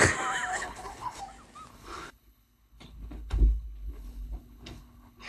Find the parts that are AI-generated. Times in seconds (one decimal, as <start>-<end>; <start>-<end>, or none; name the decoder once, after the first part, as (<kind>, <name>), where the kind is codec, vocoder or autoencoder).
0.5-1.2 (codec, HILCodec); 1.7-5.3